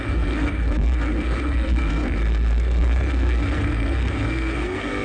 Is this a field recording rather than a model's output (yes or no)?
no